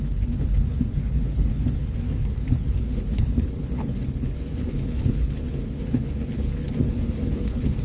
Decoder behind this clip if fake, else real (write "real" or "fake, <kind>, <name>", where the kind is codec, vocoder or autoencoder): fake, codec, HILCodec